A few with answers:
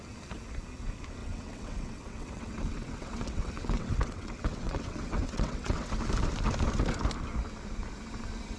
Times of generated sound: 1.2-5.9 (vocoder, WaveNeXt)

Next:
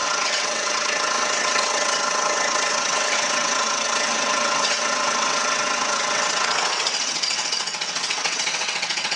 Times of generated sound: 0.0-9.2 (vocoder, WaveNeXt)

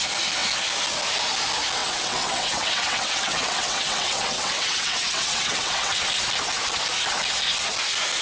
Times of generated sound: 1.8-6.0 (vocoder, WaveNeXt)